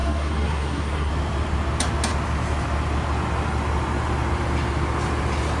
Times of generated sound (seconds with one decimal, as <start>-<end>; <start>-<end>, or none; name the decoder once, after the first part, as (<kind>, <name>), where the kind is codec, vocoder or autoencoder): 0.0-1.1 (codec, SNAC)